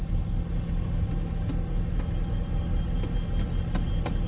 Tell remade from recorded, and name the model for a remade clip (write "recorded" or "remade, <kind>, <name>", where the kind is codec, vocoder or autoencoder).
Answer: recorded